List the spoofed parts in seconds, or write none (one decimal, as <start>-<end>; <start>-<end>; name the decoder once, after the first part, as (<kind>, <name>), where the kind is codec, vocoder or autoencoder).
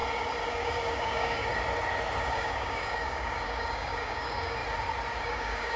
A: 0.5-1.5 (codec, DAC); 2.2-4.6; 5.2-5.8